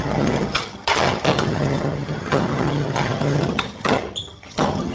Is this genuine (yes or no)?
no